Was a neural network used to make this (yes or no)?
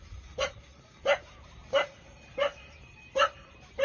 yes